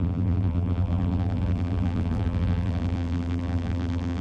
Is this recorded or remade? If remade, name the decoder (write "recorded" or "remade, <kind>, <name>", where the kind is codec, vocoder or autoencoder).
remade, vocoder, BigVGAN v2